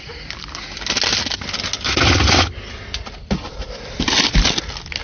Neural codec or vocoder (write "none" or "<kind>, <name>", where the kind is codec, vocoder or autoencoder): none